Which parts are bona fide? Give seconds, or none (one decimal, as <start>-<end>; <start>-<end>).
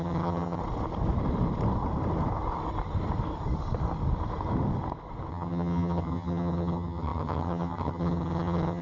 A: 0.6-5.3